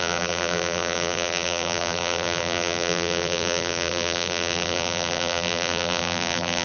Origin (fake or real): fake